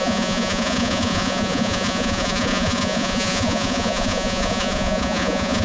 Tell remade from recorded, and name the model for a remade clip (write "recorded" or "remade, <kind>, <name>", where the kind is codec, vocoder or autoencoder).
remade, vocoder, Vocos